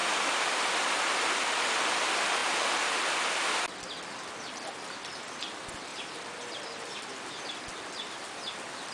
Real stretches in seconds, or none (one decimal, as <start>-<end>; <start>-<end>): 1.0-2.4; 3.2-5.9; 7.5-8.9